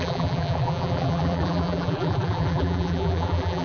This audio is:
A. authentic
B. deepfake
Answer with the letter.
B